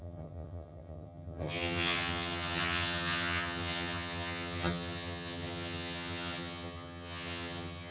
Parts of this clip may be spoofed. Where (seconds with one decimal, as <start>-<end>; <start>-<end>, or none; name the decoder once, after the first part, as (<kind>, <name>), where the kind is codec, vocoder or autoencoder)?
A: 0.0-7.9 (vocoder, HiFi-GAN)